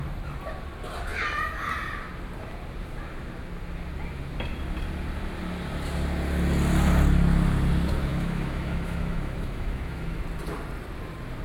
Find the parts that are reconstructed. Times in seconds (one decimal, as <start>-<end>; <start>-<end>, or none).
8.1-10.2